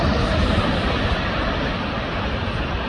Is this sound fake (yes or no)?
no